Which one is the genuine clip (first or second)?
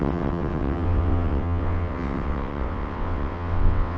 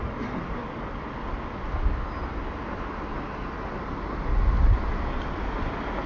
second